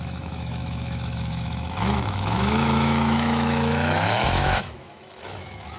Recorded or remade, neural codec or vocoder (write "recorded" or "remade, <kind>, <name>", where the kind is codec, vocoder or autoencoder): remade, autoencoder, DAC-VAE